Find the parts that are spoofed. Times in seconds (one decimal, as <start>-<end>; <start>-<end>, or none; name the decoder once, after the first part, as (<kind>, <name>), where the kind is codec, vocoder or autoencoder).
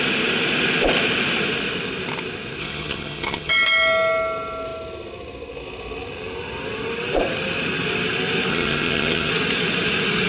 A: 2.6-3.5 (vocoder, HiFi-GAN); 8.5-9.3